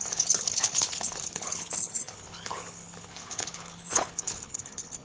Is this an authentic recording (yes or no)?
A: no